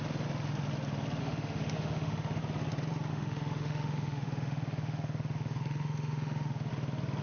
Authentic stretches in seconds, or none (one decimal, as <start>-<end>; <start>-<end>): 0.0-1.2; 2.4-3.1; 6.7-7.2